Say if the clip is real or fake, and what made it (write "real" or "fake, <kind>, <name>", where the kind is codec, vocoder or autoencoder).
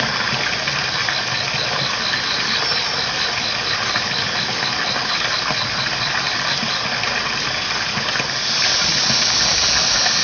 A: real